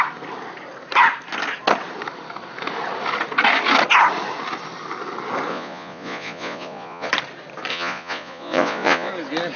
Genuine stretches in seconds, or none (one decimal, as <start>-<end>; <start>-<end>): 0.0-5.5; 7.1-7.7; 9.1-9.6